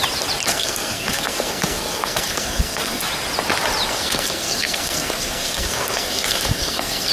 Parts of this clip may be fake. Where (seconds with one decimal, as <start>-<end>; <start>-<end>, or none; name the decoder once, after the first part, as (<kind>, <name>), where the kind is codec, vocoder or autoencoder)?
0.5-3.0 (codec, SNAC); 3.9-7.1